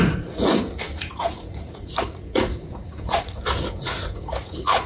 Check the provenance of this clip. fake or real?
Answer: fake